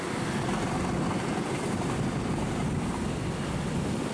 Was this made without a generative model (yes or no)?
no